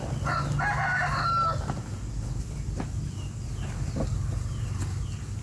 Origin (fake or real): real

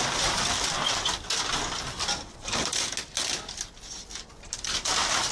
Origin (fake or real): real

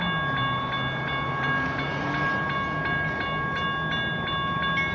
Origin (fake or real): real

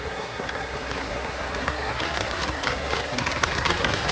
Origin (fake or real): fake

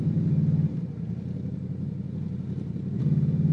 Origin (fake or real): real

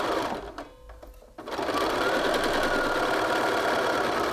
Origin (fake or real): real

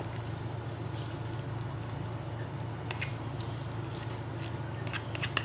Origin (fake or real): real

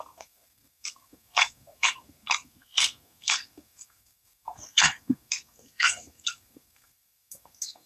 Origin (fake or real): fake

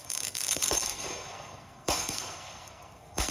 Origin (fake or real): fake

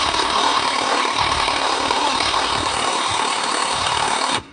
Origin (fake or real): fake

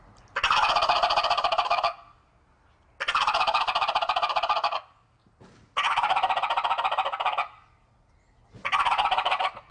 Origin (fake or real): real